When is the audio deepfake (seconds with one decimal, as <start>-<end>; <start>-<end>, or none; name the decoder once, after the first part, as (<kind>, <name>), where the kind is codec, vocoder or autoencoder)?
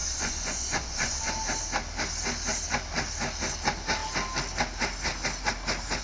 0.0-1.3 (vocoder, Vocos)